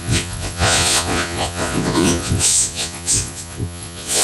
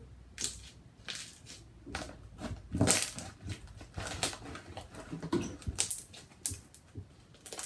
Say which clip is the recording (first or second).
second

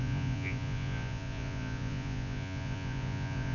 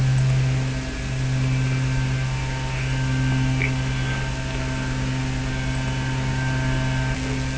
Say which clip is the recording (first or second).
second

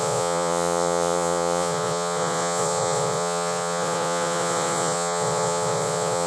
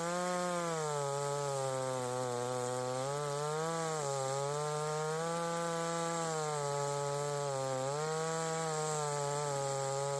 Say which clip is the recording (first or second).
second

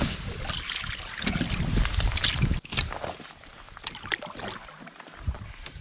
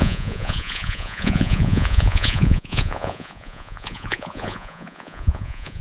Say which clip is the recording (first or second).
first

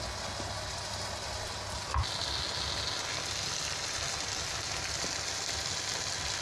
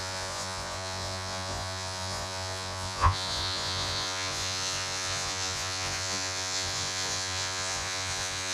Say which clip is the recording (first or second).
first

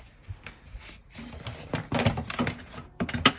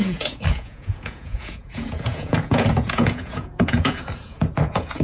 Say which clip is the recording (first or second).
first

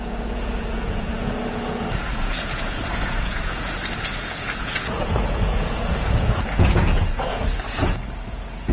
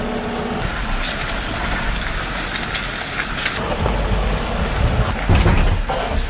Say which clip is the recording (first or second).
second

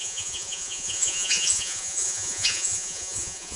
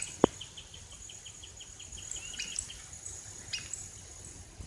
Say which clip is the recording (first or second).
second